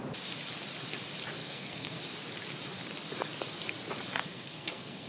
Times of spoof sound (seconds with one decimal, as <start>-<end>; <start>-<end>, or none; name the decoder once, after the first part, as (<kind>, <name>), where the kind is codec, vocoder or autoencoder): 1.4-2.0 (codec, SNAC); 4.2-5.1